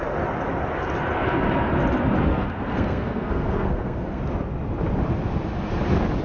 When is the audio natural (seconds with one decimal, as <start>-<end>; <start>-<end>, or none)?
0.0-2.3; 4.2-6.2